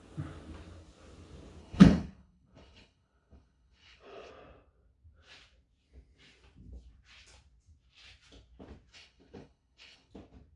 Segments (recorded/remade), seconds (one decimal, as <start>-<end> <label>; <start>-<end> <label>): 0.0-1.6 recorded; 1.6-4.3 remade; 4.3-8.9 recorded; 8.9-10.1 remade; 10.1-10.6 recorded